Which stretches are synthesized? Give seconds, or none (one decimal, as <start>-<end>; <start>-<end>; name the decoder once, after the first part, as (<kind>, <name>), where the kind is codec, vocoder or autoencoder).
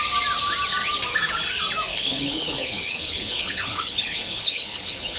1.9-5.2 (codec, HILCodec)